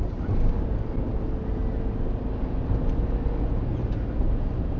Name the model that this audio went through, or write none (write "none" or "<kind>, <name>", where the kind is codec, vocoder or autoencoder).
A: none